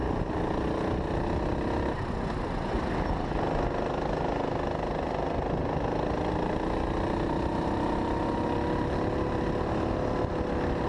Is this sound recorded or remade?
recorded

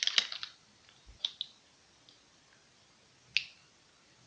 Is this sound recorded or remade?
recorded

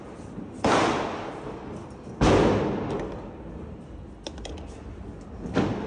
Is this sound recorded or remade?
recorded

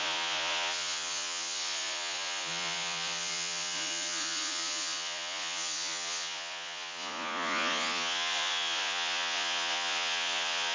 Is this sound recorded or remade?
remade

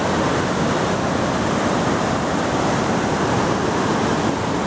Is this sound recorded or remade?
recorded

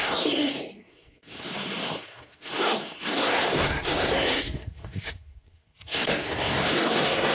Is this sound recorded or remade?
remade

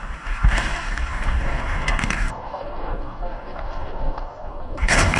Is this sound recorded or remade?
remade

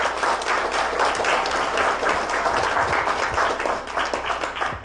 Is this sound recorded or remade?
recorded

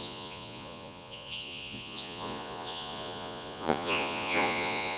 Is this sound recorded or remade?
remade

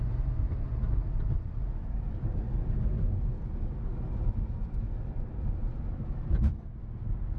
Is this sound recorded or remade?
recorded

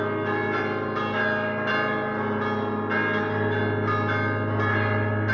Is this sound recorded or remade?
recorded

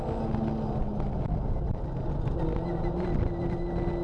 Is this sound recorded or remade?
recorded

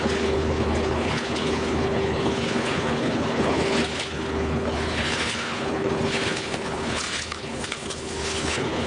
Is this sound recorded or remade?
remade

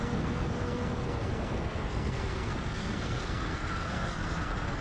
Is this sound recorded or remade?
remade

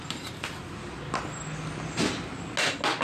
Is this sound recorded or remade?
recorded